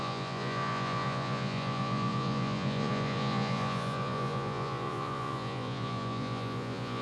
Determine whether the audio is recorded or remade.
remade